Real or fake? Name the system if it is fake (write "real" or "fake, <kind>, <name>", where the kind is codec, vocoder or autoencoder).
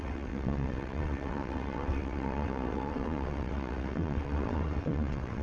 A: fake, vocoder, WaveNeXt